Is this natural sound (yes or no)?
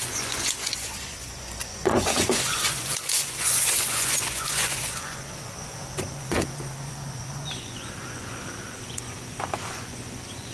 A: no